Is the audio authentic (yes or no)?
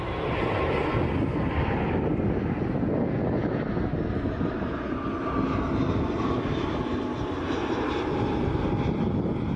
yes